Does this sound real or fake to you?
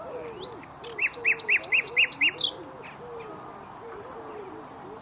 real